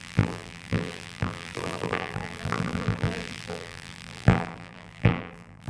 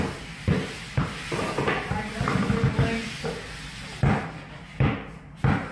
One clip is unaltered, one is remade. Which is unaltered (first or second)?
second